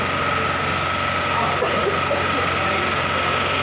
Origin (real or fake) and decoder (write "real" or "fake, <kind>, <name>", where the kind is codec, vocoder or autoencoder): real